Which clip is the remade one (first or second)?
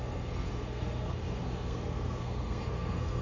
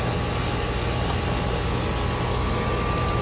first